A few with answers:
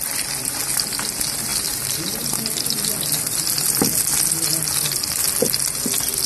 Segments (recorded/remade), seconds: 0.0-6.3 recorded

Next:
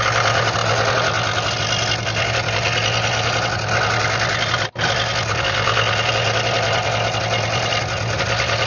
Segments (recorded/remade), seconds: 0.0-8.7 recorded

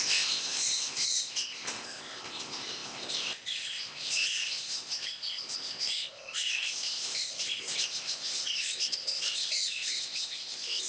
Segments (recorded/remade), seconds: 0.0-10.9 remade

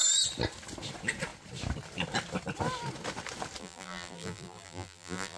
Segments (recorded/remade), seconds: 0.0-3.6 recorded; 3.6-5.4 remade

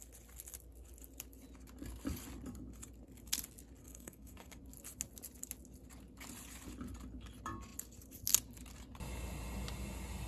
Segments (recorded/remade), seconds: 0.0-3.8 recorded; 3.8-4.6 remade; 4.6-10.3 recorded

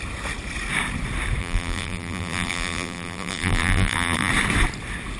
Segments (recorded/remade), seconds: 0.0-1.4 recorded; 1.4-4.3 remade; 4.3-5.2 recorded